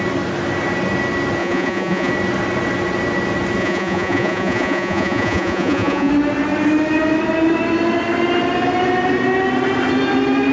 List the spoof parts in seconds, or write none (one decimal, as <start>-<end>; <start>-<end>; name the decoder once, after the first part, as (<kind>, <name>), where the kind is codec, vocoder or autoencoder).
1.4-2.1 (vocoder, Vocos); 3.6-6.1